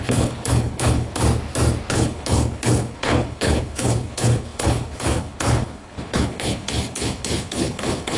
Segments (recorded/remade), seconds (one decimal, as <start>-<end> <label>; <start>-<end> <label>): 0.0-1.2 remade; 1.2-1.9 recorded; 1.9-8.2 remade